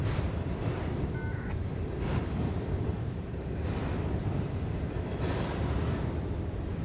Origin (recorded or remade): recorded